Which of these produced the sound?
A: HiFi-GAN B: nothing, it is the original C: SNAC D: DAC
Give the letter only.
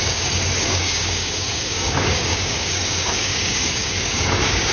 D